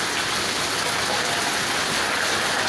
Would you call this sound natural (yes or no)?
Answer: yes